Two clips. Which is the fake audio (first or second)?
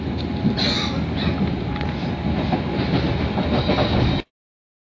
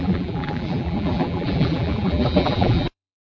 second